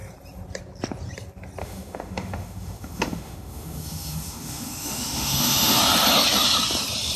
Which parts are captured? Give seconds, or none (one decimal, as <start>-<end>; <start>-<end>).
0.0-1.6; 5.8-7.2